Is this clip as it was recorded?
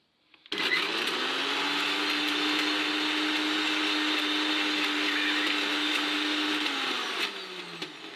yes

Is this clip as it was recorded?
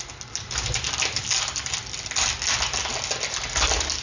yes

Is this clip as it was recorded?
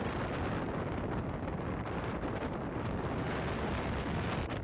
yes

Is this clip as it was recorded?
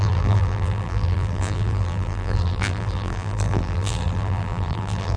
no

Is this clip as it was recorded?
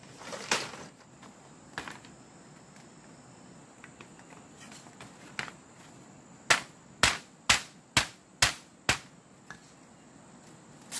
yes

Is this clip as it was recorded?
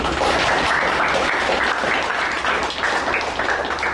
yes